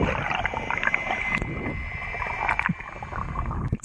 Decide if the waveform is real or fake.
real